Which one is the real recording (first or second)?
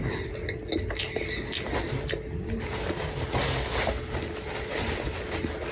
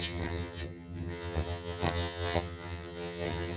first